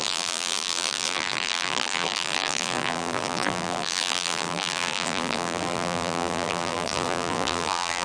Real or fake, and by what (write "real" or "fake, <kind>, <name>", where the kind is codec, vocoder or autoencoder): fake, vocoder, BigVGAN v2